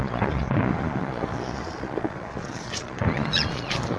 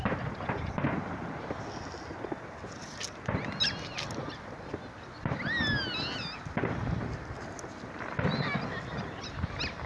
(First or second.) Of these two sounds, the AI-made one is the first